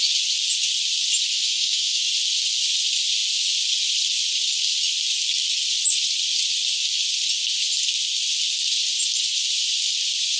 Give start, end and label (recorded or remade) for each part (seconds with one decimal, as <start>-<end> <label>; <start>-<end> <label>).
0.0-1.3 recorded; 1.3-2.1 remade; 2.1-10.4 recorded